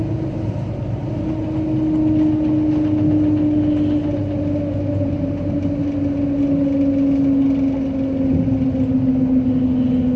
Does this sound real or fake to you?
real